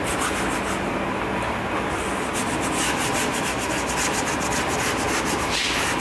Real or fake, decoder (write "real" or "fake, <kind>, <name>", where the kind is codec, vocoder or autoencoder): real